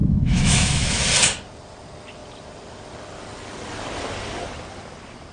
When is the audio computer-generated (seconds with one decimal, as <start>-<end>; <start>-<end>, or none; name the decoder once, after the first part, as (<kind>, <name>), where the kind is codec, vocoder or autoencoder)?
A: 0.0-1.0 (autoencoder, DAC-VAE)